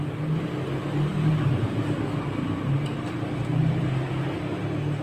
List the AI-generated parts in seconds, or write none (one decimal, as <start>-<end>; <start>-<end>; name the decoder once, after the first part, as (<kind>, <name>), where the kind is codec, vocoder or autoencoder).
none